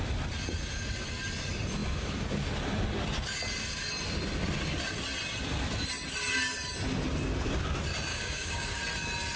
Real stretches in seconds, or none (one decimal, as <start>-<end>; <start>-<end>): 0.0-8.1; 8.8-9.4